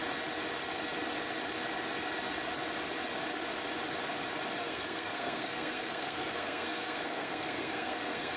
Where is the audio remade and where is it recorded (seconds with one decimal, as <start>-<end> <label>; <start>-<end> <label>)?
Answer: 0.0-4.6 recorded; 4.6-8.4 remade